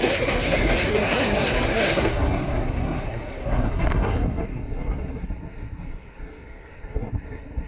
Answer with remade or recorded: remade